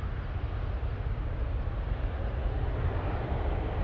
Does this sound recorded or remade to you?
recorded